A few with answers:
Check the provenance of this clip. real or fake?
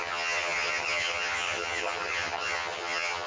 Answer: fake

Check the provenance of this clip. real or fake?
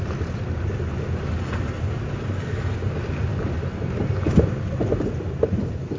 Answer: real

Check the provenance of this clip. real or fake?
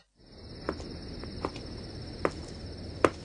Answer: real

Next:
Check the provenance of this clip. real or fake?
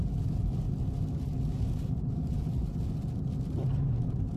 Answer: real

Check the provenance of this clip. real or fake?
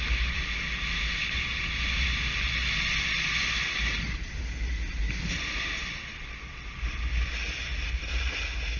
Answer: real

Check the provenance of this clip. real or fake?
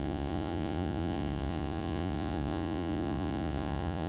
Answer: fake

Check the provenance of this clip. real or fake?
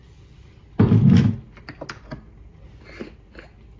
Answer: real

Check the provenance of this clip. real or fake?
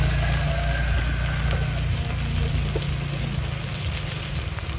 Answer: real